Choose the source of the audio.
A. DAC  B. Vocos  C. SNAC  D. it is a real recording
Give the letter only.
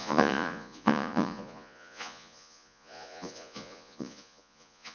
B